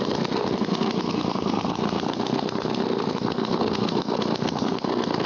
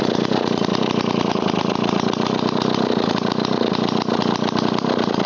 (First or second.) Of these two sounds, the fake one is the first